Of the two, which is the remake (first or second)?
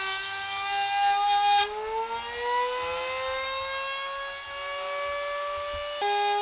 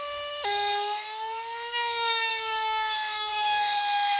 second